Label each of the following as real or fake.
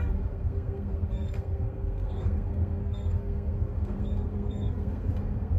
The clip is fake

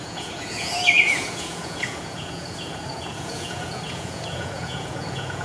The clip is fake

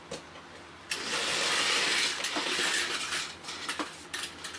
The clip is real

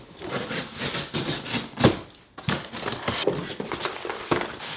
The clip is real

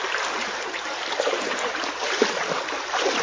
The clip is fake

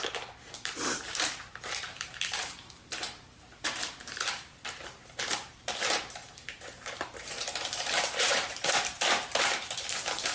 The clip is fake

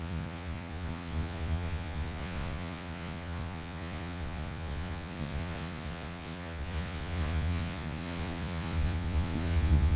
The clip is fake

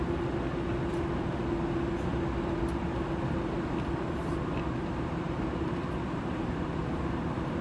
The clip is real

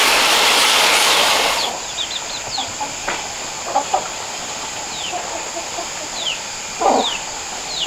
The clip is real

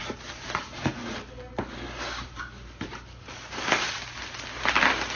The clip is real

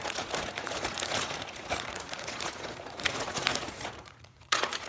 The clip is fake